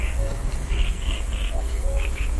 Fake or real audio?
fake